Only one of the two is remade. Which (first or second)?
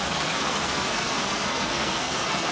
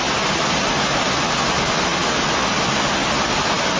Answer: first